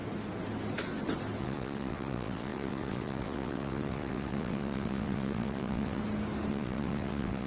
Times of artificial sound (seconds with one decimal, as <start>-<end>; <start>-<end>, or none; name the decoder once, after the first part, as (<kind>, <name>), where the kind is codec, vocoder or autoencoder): 1.4-6.0 (vocoder, WaveNeXt); 6.5-7.5